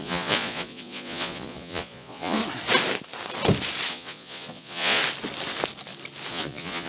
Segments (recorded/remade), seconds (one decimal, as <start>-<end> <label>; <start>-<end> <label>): 0.0-2.4 remade; 2.4-3.9 recorded; 3.9-5.0 remade; 5.0-6.3 recorded; 6.3-6.9 remade